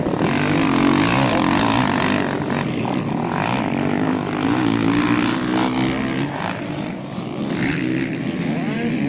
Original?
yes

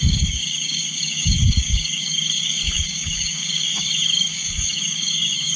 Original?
no